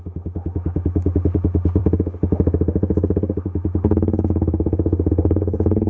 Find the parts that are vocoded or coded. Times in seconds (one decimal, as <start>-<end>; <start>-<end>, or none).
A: 0.0-5.9